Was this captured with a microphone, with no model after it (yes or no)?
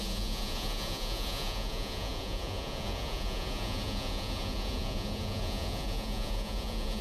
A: no